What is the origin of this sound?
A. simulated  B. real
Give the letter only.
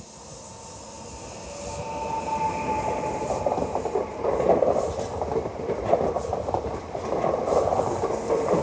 B